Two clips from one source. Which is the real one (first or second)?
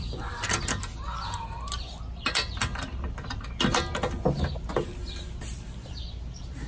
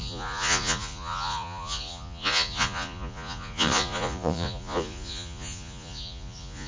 first